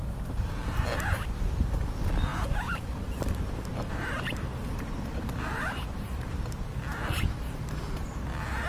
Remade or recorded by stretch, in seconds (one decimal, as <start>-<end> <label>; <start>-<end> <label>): 0.0-0.6 remade; 0.6-2.3 recorded; 2.3-6.4 remade; 6.4-8.7 recorded